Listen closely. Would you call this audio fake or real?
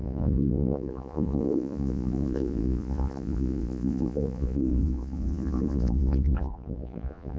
fake